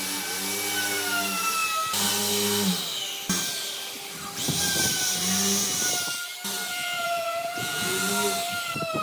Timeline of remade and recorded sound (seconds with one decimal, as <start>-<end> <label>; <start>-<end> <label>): 0.0-6.7 recorded; 6.7-8.1 remade; 8.1-9.0 recorded